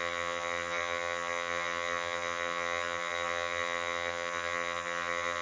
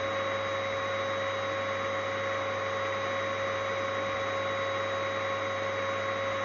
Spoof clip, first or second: first